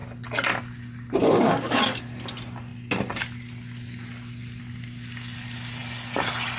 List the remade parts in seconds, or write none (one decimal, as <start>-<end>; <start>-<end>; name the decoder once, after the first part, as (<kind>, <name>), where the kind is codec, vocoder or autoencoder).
1.2-2.0 (codec, DAC)